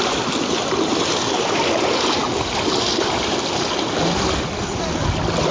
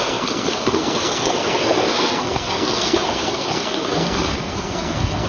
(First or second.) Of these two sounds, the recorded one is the first